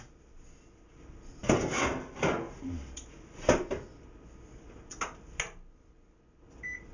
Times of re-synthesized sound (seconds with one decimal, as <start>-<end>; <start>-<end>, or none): none